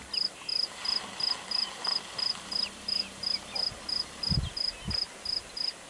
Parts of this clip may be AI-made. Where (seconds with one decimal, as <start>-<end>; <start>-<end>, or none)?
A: none